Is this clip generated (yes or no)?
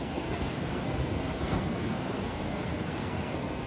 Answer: yes